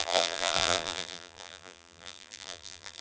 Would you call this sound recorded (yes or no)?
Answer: no